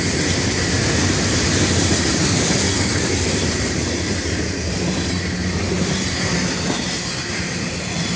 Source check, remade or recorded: recorded